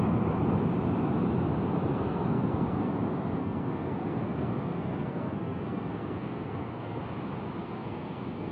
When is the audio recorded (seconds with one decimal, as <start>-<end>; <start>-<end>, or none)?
0.0-1.9; 2.9-3.4; 7.0-7.6